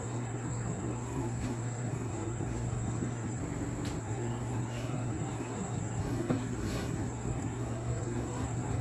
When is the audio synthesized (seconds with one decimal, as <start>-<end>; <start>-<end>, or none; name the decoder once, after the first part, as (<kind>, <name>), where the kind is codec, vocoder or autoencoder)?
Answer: 0.0-3.4 (codec, SNAC); 4.0-8.8